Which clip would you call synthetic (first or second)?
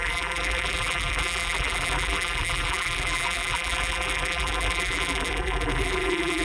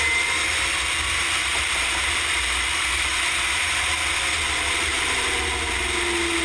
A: first